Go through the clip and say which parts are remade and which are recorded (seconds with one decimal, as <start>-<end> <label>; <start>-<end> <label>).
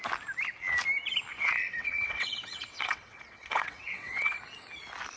0.0-1.3 recorded; 1.3-4.4 remade; 4.4-5.2 recorded